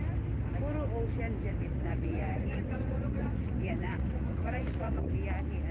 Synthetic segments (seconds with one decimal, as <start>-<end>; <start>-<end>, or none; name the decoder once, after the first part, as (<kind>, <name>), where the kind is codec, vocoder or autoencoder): 1.7-5.1 (vocoder, Vocos)